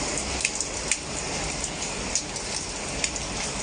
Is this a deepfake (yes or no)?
no